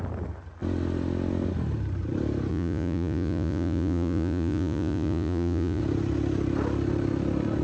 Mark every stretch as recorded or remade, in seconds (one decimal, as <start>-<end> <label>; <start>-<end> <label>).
0.0-2.5 recorded; 2.5-5.8 remade; 5.8-7.6 recorded